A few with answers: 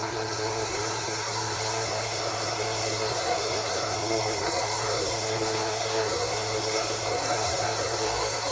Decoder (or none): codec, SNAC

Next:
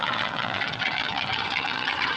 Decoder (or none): vocoder, WaveNeXt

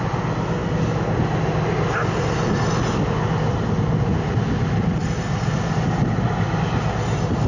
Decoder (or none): none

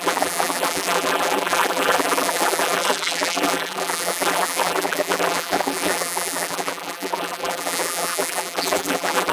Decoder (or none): vocoder, BigVGAN v2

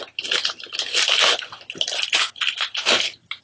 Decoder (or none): none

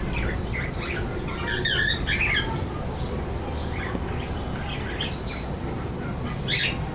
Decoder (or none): none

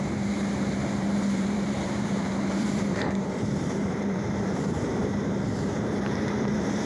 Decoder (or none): vocoder, BigVGAN v2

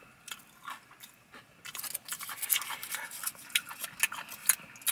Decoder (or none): none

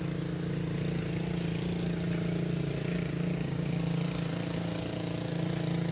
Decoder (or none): none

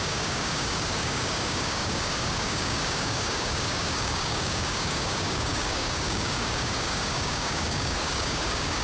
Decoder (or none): codec, DAC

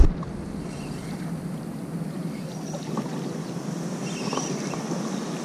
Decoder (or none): vocoder, BigVGAN v2